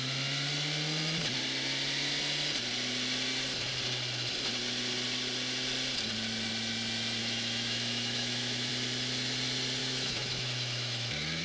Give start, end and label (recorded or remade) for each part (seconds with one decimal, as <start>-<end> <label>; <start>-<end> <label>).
0.0-7.2 recorded; 7.2-8.7 remade; 8.7-9.8 recorded; 9.8-11.4 remade